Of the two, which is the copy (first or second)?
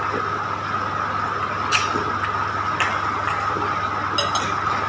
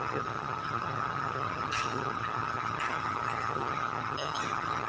second